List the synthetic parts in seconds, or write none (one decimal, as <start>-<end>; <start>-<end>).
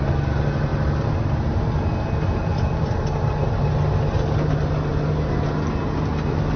none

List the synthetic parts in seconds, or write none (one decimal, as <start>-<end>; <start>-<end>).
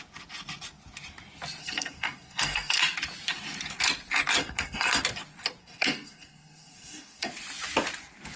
1.6-2.8; 4.4-5.0; 5.6-7.3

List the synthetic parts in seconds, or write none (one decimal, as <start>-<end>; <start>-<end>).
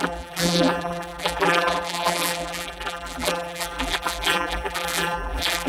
0.0-5.7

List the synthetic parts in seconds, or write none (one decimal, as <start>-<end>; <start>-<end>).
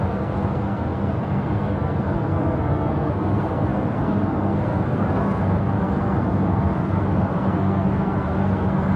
0.0-9.0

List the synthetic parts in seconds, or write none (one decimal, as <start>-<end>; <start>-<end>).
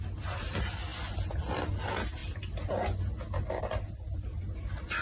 none